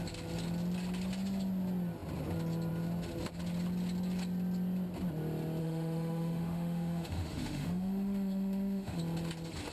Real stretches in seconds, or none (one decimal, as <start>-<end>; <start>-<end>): 0.0-5.6; 9.0-9.7